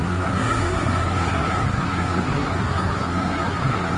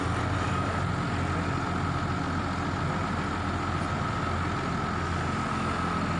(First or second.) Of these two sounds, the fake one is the first